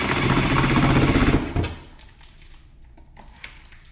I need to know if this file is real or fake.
real